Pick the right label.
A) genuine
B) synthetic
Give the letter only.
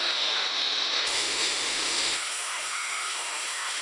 B